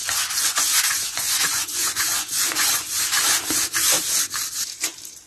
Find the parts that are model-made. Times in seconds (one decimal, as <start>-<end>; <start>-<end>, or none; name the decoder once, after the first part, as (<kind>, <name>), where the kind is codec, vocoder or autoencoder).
0.0-3.0 (vocoder, Vocos)